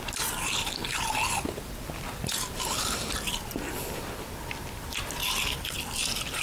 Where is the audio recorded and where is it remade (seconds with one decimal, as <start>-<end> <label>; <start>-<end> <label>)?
0.0-6.4 recorded